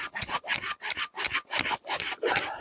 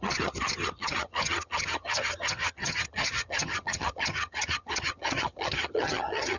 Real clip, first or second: first